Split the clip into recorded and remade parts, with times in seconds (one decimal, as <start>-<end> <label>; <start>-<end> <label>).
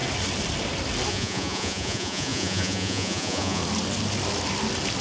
0.0-1.1 recorded; 1.1-3.6 remade; 3.6-5.0 recorded